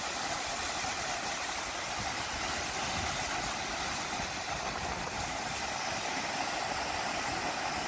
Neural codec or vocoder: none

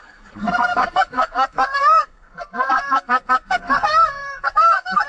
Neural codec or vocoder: codec, SNAC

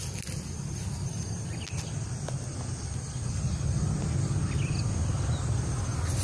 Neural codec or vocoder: none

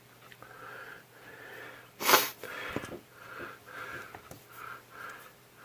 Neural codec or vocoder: none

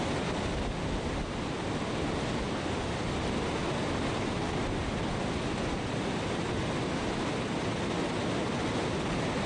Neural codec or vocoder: none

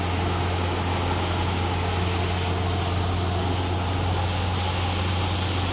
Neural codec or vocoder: none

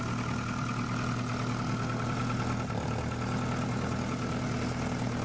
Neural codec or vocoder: none